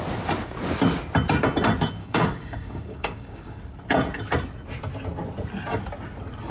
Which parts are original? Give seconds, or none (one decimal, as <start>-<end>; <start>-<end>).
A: 0.0-2.0; 3.6-6.5